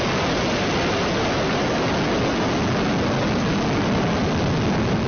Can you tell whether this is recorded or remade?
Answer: recorded